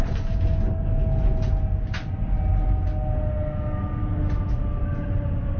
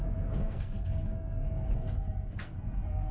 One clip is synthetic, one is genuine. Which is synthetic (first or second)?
second